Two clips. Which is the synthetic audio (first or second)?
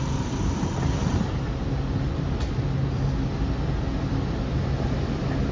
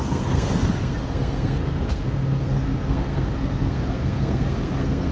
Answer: second